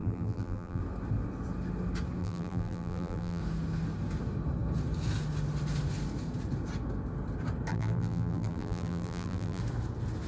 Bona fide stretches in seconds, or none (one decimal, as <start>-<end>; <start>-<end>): 0.8-2.2; 3.4-7.7; 9.6-10.3